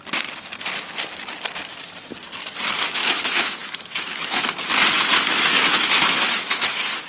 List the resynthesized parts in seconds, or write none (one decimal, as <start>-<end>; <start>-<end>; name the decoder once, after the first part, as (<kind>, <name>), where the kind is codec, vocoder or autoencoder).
3.0-4.4 (autoencoder, DAC-VAE); 5.1-7.1